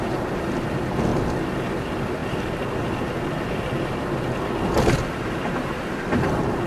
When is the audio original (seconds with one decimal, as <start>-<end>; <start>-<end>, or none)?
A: 0.0-6.7